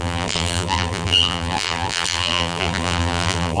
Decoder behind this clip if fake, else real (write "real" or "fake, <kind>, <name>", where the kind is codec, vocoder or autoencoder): fake, vocoder, BigVGAN v2